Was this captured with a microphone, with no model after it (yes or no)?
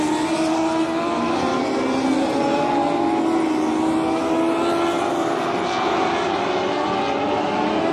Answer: yes